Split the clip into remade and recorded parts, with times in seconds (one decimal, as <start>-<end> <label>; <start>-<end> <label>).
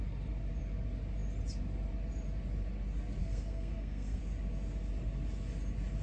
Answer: 0.0-3.2 recorded; 3.2-4.2 remade; 4.2-6.0 recorded